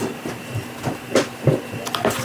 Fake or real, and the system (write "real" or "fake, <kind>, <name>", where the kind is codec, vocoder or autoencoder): real